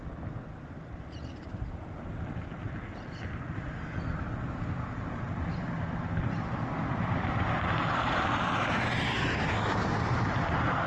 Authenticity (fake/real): real